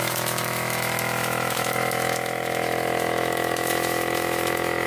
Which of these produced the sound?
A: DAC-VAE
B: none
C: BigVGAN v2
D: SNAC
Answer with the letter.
A